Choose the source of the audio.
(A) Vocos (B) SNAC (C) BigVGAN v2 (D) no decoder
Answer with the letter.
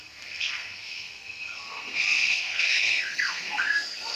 B